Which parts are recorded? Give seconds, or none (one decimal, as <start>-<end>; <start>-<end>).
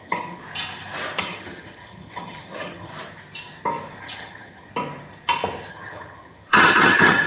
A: 0.4-1.2; 2.9-4.0; 4.7-5.7